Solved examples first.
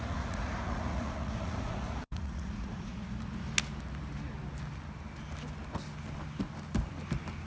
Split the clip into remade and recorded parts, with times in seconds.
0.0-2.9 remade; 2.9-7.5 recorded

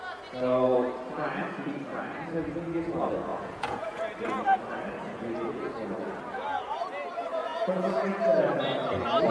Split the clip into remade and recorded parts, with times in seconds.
0.0-3.3 recorded; 3.3-4.0 remade; 4.0-7.4 recorded; 7.4-8.2 remade; 8.2-9.3 recorded

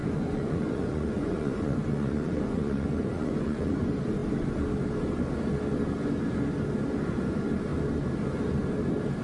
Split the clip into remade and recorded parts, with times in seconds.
0.0-3.8 remade; 3.8-9.2 recorded